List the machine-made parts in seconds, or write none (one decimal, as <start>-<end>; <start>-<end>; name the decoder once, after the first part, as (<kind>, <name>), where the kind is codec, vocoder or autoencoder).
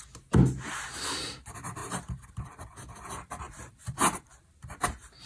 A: 1.8-5.3 (vocoder, BigVGAN v2)